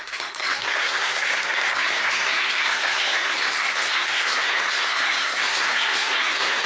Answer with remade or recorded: remade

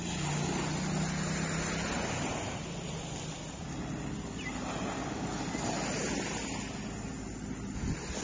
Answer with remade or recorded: recorded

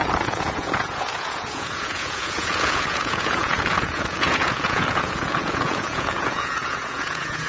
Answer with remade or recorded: remade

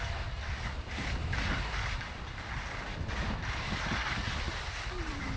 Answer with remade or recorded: recorded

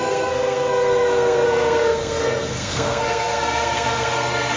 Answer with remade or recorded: remade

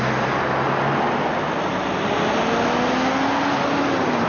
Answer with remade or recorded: recorded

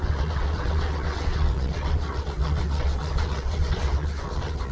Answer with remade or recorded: remade